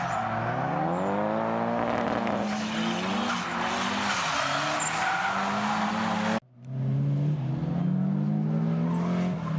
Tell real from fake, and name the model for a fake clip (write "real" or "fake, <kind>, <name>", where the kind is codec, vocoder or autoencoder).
real